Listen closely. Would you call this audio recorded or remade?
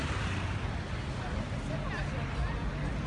recorded